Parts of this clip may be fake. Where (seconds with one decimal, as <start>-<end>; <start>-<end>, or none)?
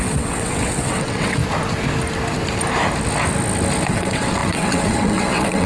0.0-1.4; 3.9-5.7